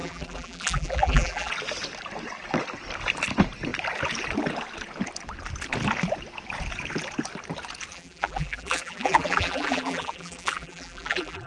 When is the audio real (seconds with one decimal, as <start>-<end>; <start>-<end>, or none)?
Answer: 1.5-7.9